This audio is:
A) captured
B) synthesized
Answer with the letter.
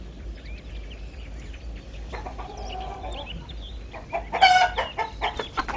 A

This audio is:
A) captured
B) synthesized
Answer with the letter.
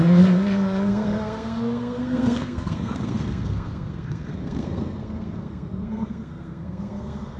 B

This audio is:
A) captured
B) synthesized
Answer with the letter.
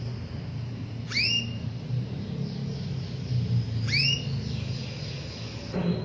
A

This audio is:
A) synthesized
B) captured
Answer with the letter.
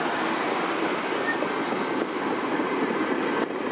B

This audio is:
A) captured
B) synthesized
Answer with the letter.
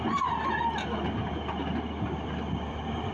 A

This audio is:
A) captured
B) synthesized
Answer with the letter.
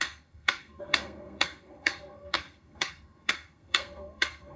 B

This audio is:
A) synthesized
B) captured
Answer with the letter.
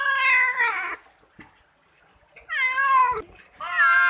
B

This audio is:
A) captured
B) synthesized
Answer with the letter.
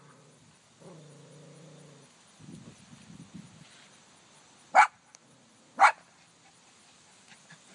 A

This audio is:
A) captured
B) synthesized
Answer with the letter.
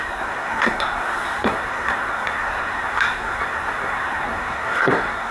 B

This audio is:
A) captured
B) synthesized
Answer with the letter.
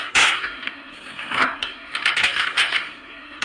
B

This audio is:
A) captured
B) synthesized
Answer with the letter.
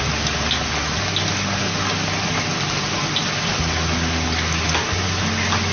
A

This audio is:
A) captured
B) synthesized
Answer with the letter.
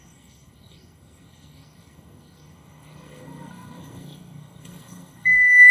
B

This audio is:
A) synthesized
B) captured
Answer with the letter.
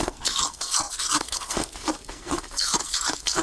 A